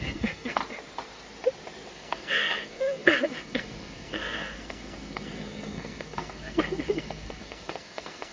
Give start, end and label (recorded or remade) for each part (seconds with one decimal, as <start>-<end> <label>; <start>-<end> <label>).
0.0-0.6 remade; 0.6-1.9 recorded; 1.9-8.3 remade